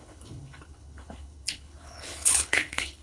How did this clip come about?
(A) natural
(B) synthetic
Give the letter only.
B